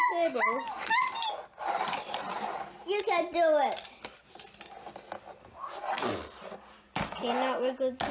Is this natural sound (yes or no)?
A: yes